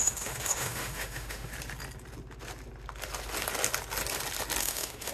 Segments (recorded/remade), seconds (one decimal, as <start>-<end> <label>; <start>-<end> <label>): 0.0-1.5 remade; 1.5-4.6 recorded; 4.6-5.1 remade